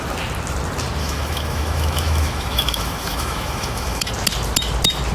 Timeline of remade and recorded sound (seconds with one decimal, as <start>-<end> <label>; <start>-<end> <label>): 0.0-1.0 recorded; 1.0-4.1 remade; 4.1-5.1 recorded